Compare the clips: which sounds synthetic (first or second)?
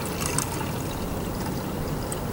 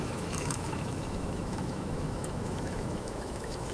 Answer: second